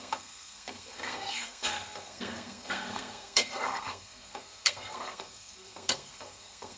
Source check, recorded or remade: remade